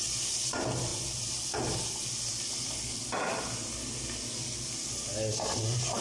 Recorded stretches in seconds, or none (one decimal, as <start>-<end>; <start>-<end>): 0.0-6.0